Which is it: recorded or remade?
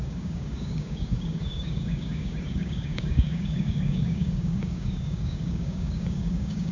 remade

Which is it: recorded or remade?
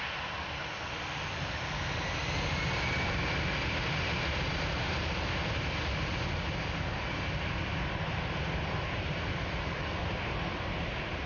recorded